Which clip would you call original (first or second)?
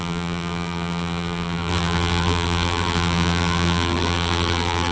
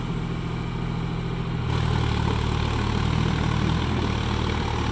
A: second